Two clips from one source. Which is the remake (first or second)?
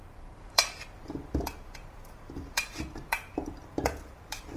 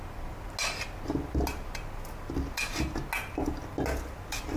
first